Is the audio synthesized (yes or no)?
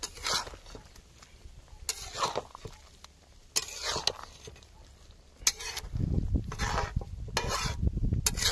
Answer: no